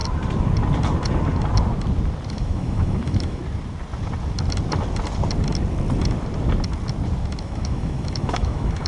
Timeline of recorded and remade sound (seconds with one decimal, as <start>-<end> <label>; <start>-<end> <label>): 0.0-2.3 recorded; 2.3-3.4 remade; 3.4-7.4 recorded; 7.4-8.9 remade